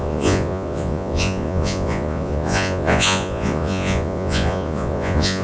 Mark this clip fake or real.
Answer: fake